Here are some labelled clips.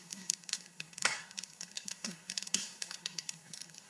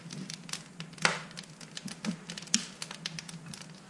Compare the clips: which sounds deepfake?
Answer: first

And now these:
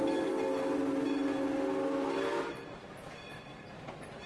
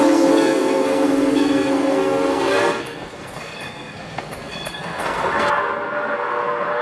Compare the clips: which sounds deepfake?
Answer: second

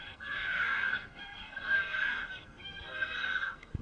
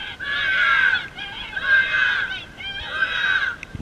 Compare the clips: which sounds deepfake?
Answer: first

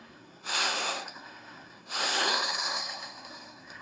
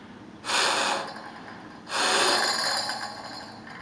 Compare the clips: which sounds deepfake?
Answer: first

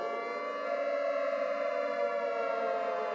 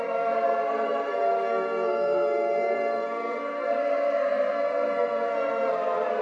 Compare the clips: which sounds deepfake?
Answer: second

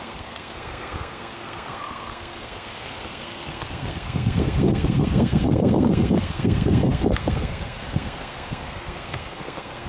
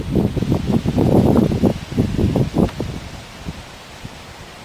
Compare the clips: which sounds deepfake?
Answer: first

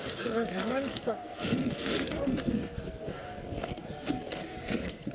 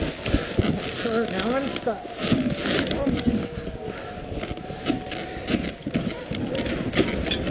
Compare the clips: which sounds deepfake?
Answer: first